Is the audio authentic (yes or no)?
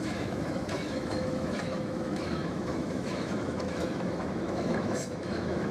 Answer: no